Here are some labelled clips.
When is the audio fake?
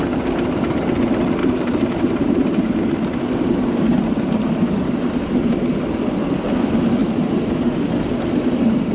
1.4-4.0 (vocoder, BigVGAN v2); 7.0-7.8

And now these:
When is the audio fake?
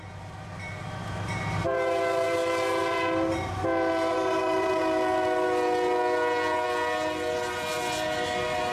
1.0-3.6 (vocoder, BigVGAN v2); 4.1-4.8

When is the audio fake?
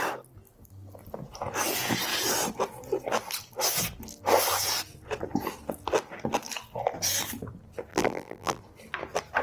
7.9-8.6 (vocoder, BigVGAN v2)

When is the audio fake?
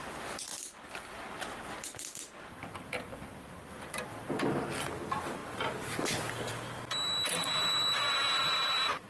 0.5-1.1 (vocoder, BigVGAN v2)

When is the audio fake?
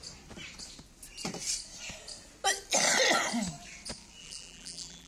4.2-5.1 (vocoder, BigVGAN v2)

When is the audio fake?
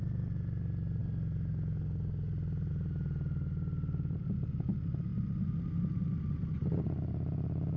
none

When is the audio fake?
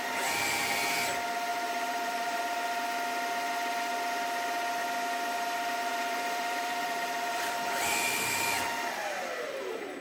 1.5-2.4 (vocoder, BigVGAN v2); 5.9-8.8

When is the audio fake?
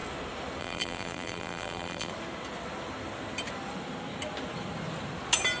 0.6-2.1 (vocoder, BigVGAN v2)